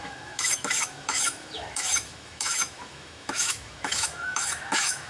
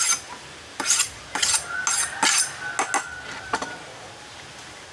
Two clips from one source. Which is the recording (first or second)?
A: second